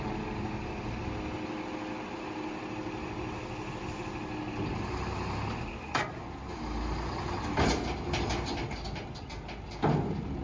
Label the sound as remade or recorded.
recorded